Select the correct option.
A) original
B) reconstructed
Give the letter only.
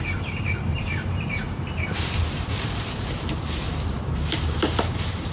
B